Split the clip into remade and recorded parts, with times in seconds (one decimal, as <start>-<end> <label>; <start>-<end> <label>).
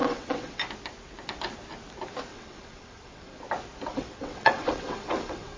0.0-0.6 remade; 0.6-2.3 recorded; 2.3-3.4 remade; 3.4-3.9 recorded; 3.9-5.6 remade